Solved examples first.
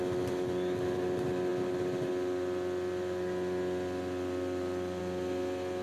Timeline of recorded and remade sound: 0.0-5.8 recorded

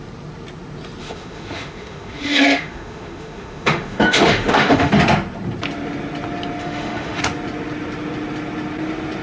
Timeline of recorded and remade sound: 0.0-1.0 recorded; 1.0-4.9 remade; 4.9-6.6 recorded; 6.6-7.2 remade; 7.2-9.2 recorded